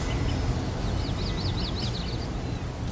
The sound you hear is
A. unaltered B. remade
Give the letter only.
A